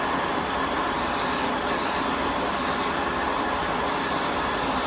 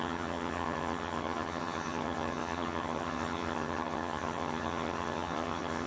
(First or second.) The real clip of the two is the first